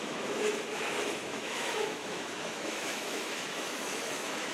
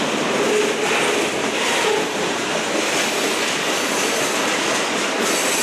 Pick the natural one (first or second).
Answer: second